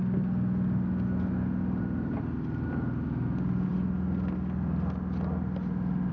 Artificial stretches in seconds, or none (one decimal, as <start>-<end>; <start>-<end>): none